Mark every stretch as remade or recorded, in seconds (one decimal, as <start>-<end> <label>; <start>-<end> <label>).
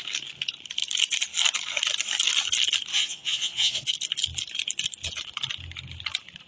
0.0-2.9 recorded; 2.9-3.8 remade; 3.8-6.5 recorded